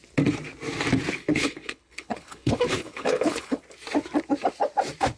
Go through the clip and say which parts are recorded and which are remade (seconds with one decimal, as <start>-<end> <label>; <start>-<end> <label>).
0.0-1.2 recorded; 1.2-3.6 remade; 3.6-5.2 recorded